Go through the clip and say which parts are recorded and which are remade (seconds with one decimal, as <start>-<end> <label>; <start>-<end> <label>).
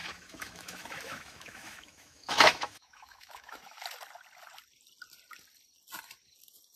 0.0-3.8 remade; 3.8-6.8 recorded